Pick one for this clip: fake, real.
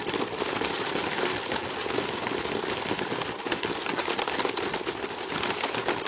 real